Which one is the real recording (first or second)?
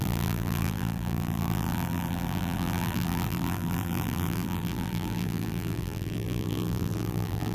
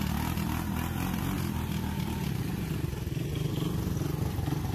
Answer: second